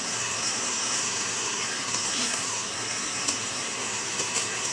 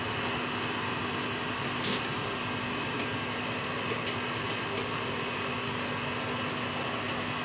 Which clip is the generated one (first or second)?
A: first